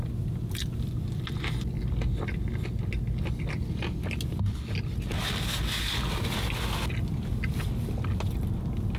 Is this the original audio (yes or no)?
yes